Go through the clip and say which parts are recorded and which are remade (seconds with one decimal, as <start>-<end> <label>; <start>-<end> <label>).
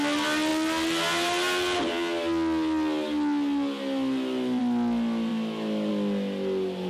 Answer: 0.0-6.9 recorded